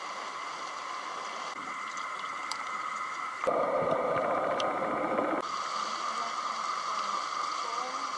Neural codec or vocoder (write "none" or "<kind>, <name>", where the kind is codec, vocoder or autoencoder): none